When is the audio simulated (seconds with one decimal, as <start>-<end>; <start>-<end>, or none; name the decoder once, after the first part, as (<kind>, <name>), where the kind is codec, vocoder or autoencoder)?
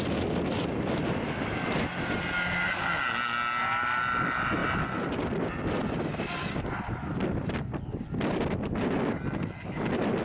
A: none